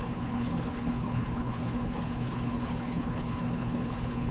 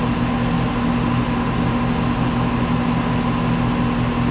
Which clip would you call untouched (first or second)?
second